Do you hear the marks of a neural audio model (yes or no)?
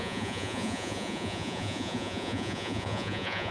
yes